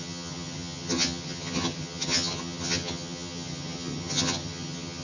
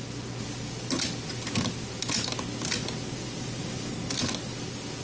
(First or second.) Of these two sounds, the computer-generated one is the first